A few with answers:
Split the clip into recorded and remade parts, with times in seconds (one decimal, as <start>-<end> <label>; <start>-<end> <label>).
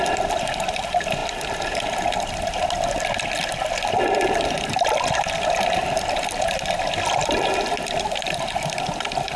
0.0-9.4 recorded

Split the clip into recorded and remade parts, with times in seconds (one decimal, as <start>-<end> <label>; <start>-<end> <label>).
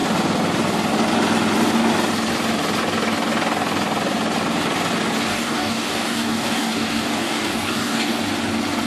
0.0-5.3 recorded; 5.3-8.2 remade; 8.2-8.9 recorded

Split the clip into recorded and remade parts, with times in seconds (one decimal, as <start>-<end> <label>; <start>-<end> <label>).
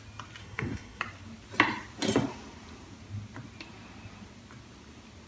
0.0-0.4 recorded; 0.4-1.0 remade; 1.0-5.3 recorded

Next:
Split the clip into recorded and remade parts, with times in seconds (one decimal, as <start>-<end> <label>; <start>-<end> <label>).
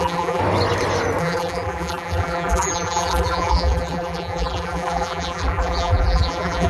0.0-0.4 remade; 0.4-1.2 recorded; 1.2-6.7 remade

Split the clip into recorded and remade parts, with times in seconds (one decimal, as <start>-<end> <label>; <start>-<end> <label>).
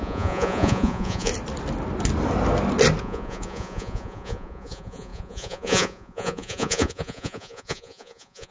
0.0-1.3 remade; 1.3-3.0 recorded; 3.0-8.5 remade